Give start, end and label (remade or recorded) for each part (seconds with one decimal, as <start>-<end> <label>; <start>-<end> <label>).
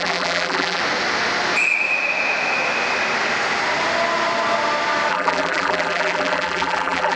0.0-0.8 remade; 0.8-5.1 recorded; 5.1-7.2 remade